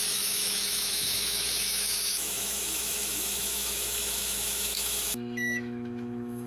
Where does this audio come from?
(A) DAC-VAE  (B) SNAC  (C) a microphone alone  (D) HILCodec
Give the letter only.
A